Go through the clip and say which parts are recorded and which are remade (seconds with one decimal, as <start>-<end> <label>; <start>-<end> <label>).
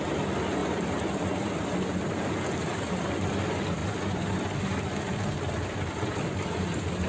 0.0-7.1 recorded